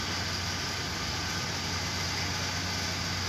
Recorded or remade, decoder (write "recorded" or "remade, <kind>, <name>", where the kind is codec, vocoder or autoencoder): recorded